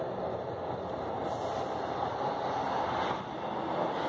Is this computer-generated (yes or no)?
no